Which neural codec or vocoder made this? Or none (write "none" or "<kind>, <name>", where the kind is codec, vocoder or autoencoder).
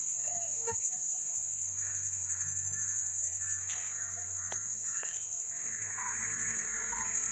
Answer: codec, SNAC